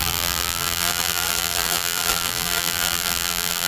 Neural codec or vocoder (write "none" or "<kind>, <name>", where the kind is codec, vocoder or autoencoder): vocoder, BigVGAN v2